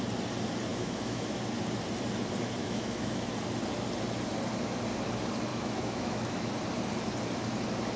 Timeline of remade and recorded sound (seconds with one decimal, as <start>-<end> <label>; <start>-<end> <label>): 0.0-0.7 recorded; 0.7-1.4 remade; 1.4-2.6 recorded; 2.6-3.3 remade; 3.3-5.5 recorded; 5.5-6.5 remade; 6.5-8.0 recorded